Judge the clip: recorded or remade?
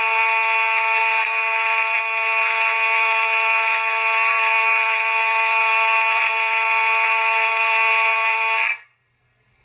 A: remade